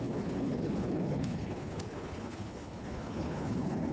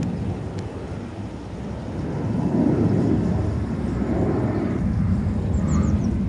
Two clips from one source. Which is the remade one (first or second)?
first